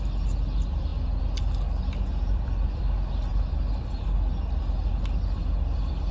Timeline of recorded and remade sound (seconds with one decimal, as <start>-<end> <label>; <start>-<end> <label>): 0.0-6.1 recorded

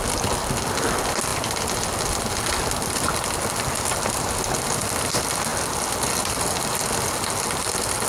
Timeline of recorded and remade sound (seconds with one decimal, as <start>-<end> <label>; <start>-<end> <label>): 0.0-8.1 recorded

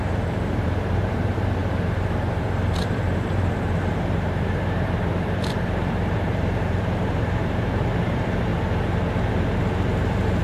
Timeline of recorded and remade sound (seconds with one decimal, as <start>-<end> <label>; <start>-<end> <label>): 0.0-8.5 remade; 8.5-9.3 recorded; 9.3-10.4 remade

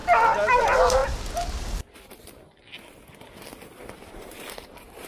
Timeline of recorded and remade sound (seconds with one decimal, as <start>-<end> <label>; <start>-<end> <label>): 0.0-0.6 recorded; 0.6-1.0 remade; 1.0-4.1 recorded; 4.1-5.1 remade

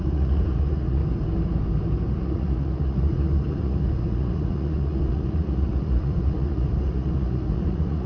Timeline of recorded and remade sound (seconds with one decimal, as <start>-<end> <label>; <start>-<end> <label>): 0.0-1.0 remade; 1.0-2.1 recorded; 2.1-8.1 remade

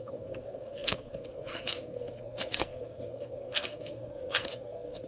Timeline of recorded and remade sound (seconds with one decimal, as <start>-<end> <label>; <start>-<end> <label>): 0.0-5.1 remade

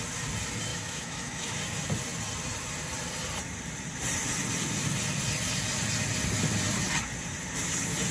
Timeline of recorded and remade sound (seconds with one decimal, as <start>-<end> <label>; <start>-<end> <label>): 0.0-0.7 recorded; 0.7-1.6 remade; 1.6-8.1 recorded